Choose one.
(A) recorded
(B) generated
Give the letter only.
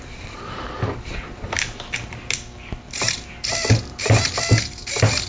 A